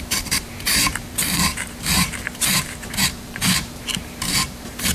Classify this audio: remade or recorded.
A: remade